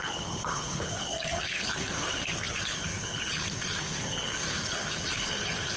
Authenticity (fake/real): fake